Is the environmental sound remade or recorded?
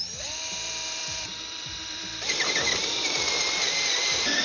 remade